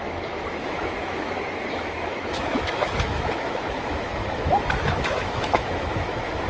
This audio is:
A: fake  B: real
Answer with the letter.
A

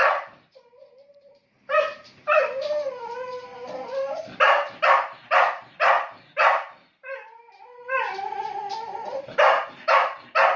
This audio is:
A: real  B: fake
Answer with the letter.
B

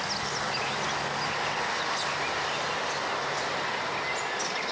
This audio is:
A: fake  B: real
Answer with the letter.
B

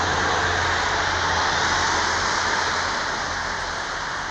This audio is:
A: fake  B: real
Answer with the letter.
B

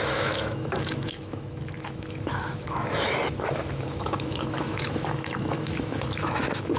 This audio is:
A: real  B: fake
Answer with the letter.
B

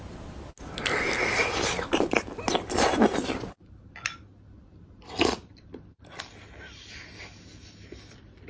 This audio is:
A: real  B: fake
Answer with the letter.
A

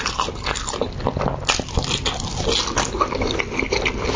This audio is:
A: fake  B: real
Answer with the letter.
B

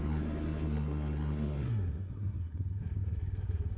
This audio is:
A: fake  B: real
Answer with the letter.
A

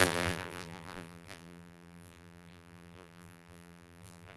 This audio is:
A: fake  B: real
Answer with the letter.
A